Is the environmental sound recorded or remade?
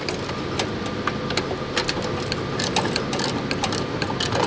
recorded